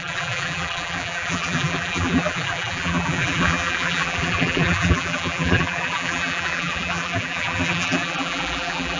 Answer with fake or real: fake